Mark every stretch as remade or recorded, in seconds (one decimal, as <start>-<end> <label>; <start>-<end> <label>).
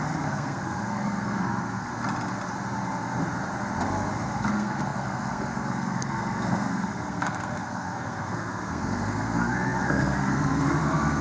0.0-1.9 remade; 1.9-3.8 recorded; 3.8-11.2 remade